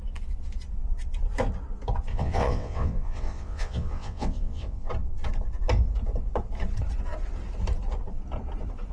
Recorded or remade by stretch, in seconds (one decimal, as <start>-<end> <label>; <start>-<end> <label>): 0.0-2.1 recorded; 2.1-4.9 remade; 4.9-8.9 recorded